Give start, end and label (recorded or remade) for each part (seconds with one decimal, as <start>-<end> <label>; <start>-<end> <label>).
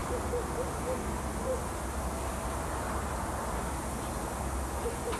0.0-5.2 recorded